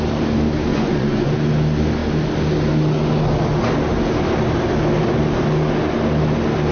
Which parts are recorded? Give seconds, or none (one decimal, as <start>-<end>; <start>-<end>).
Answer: 0.0-0.7; 1.3-6.7